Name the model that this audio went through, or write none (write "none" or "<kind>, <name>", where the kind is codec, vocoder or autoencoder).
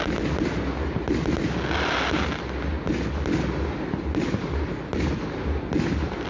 none